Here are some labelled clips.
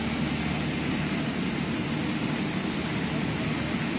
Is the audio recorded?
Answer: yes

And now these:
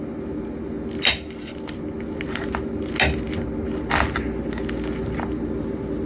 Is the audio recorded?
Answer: yes